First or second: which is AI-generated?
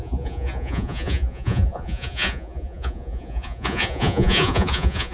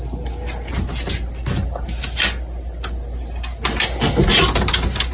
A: first